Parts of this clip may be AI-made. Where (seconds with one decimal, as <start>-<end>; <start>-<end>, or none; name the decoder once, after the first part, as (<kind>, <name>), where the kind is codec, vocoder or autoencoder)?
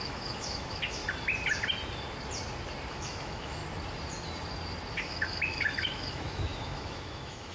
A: 0.0-1.0 (autoencoder, DAC-VAE); 2.9-3.6; 4.9-7.5